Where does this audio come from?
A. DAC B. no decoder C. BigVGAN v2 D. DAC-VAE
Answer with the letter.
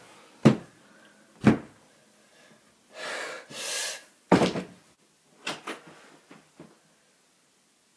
B